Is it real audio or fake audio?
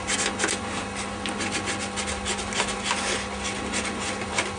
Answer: real